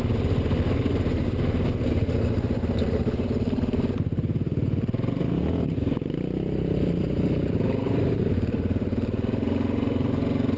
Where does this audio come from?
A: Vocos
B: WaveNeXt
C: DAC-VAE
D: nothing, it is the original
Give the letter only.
D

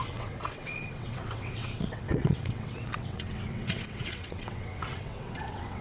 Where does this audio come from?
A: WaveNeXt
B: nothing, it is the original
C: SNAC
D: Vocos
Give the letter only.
A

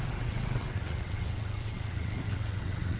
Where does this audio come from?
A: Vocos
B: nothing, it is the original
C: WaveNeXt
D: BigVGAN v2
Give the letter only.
C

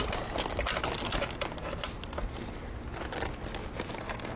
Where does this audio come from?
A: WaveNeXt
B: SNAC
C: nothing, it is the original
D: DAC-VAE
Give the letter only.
C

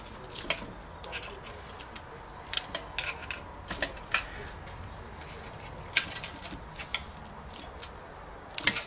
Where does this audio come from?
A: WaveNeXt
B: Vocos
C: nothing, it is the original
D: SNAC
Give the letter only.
C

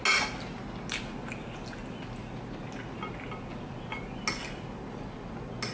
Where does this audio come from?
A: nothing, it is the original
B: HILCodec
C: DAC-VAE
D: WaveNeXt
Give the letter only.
A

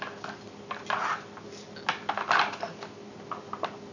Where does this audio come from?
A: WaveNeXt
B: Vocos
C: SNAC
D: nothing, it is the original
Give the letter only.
D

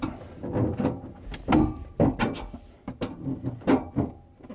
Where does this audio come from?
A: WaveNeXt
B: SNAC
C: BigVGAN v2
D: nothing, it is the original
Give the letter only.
D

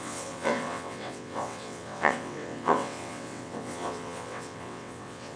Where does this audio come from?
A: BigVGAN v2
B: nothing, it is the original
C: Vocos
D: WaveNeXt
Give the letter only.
D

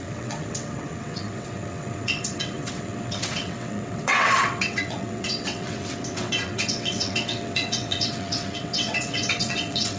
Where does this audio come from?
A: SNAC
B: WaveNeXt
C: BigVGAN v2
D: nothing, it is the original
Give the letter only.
B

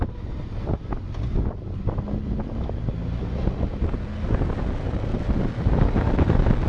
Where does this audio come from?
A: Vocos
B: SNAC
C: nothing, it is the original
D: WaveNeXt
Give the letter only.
C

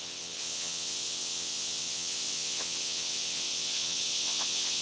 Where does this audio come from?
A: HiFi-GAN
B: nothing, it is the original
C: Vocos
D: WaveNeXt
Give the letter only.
D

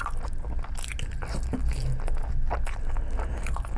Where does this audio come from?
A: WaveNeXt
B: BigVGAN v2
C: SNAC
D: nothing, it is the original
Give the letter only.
D